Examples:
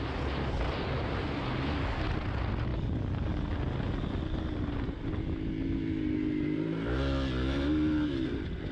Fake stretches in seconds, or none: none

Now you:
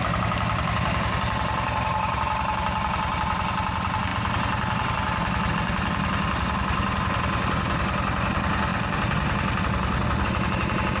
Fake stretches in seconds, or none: none

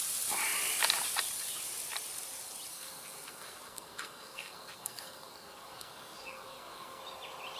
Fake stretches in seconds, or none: 2.7-7.0 (codec, SNAC)

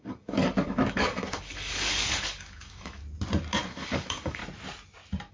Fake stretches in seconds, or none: 0.0-3.0 (codec, DAC); 3.6-4.4

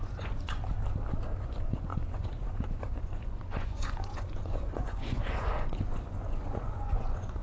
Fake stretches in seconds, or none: 0.0-0.6 (vocoder, Vocos); 1.4-7.4

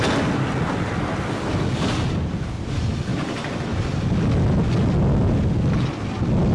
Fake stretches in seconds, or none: none

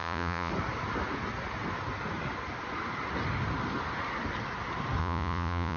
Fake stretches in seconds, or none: 0.0-0.5 (vocoder, Vocos); 5.0-5.8